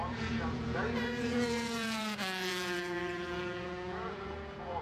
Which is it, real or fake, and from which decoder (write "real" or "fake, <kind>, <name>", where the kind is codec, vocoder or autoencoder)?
fake, vocoder, Vocos